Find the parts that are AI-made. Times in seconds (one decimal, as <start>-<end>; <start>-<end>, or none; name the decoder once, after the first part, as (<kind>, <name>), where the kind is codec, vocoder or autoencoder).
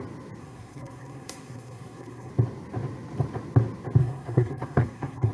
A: 0.4-2.3 (codec, SNAC); 4.0-5.3